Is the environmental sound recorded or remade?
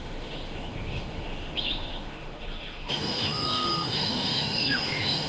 remade